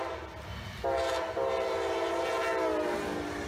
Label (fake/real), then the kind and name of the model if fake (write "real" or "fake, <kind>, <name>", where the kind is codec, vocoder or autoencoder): real